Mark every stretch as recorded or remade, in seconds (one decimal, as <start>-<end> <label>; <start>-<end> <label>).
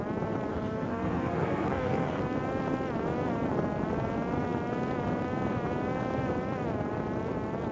0.0-0.5 recorded; 0.5-2.2 remade; 2.2-7.7 recorded